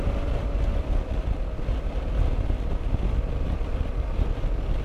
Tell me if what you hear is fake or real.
real